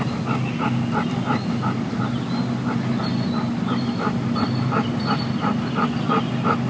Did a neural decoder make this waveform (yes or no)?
no